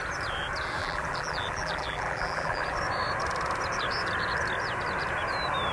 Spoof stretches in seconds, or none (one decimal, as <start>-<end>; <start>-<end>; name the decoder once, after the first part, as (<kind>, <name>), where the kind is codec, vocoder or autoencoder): 0.8-2.8 (vocoder, BigVGAN v2)